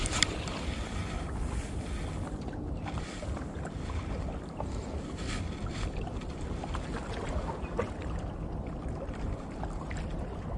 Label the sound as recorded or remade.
recorded